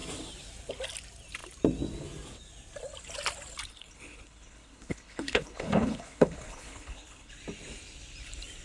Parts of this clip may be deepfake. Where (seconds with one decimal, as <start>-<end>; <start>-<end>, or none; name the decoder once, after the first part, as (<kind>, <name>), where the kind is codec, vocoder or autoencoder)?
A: 3.7-7.3 (codec, HILCodec)